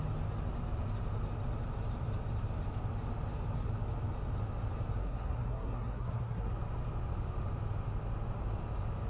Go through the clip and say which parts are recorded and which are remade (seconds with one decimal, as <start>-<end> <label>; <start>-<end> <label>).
0.0-5.0 recorded; 5.0-6.5 remade; 6.5-9.1 recorded